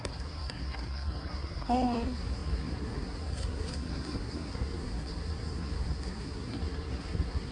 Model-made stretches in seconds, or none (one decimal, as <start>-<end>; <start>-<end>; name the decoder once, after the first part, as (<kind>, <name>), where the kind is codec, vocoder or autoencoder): 0.0-7.5 (codec, SNAC)